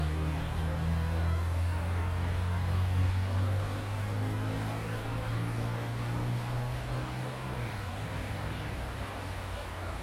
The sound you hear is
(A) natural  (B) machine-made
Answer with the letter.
B